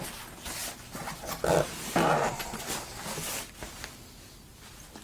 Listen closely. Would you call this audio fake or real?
real